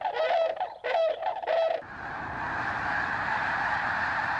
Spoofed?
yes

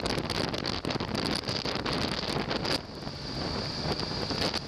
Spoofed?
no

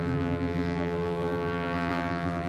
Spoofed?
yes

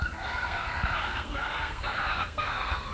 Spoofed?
yes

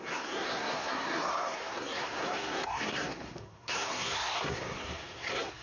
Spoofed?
yes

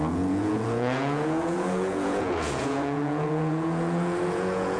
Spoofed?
yes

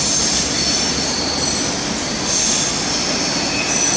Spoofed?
no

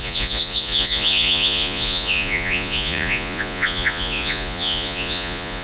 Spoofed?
yes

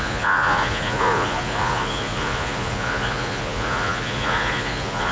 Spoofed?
yes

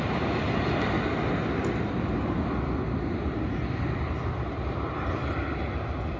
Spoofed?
no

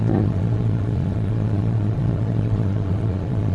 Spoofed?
yes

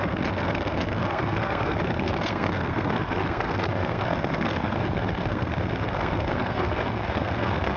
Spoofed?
yes